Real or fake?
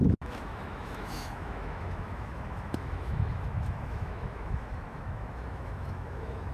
fake